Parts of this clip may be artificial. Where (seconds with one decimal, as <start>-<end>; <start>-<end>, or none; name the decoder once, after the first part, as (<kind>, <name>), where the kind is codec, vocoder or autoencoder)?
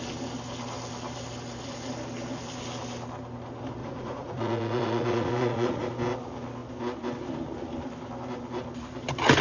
3.8-5.9 (vocoder, Vocos)